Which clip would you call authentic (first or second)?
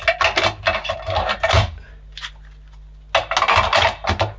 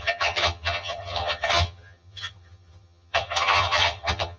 first